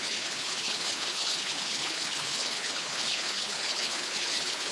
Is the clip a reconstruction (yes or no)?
yes